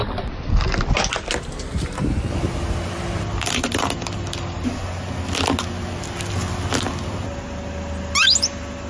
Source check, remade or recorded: recorded